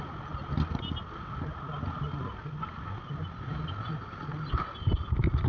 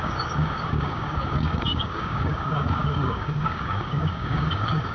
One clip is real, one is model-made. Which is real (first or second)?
first